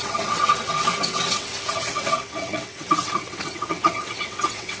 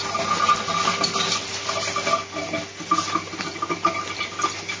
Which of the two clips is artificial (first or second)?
first